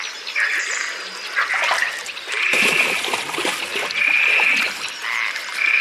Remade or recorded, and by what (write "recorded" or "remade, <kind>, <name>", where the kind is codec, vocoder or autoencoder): recorded